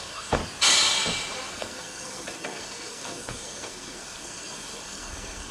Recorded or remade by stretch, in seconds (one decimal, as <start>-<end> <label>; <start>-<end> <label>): 0.0-0.4 remade; 0.4-1.5 recorded; 1.5-5.5 remade